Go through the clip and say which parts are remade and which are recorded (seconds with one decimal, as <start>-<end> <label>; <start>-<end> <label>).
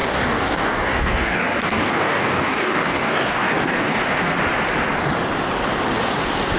0.0-4.0 remade; 4.0-6.6 recorded